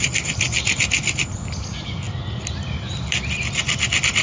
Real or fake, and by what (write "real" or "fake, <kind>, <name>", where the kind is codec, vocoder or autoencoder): real